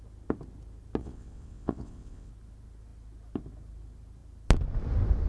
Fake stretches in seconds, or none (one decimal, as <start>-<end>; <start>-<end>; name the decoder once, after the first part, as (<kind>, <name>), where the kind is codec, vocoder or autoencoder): 1.0-2.3 (vocoder, WaveNeXt)